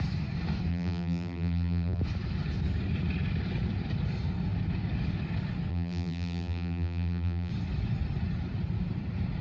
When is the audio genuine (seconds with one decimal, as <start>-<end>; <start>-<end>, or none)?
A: 0.0-0.7; 2.0-5.7; 7.5-9.4